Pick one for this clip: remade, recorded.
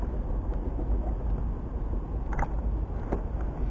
recorded